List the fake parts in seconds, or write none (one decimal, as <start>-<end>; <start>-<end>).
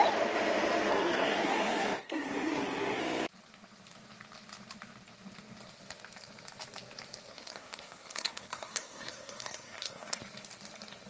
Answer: 0.9-3.0; 7.3-10.2